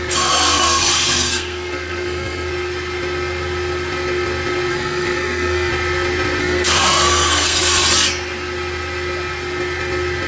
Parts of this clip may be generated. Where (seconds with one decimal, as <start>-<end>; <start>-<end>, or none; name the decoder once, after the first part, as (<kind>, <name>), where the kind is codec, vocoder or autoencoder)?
0.0-2.5 (codec, SNAC); 4.7-5.7; 6.4-7.8